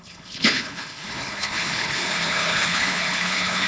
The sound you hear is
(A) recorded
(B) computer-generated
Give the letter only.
B